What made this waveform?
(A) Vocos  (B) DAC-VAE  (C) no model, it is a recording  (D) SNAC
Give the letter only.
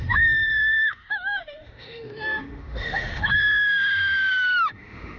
B